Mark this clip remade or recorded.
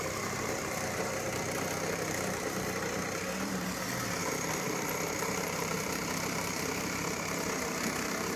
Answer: remade